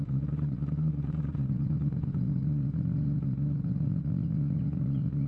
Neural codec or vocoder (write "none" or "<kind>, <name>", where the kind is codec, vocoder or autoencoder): vocoder, Vocos